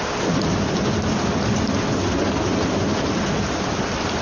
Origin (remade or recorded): recorded